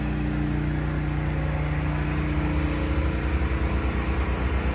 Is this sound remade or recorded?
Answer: recorded